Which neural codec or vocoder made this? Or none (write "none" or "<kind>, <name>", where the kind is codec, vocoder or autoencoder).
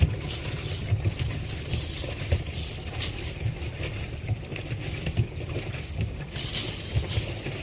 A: none